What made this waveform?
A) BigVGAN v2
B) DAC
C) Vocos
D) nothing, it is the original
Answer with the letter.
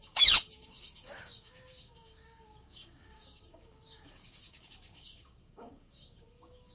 B